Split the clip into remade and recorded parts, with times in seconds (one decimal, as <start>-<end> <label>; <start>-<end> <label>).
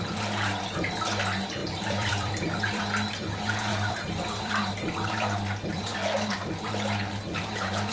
0.0-1.6 recorded; 1.6-2.8 remade; 2.8-3.7 recorded; 3.7-4.5 remade; 4.5-7.9 recorded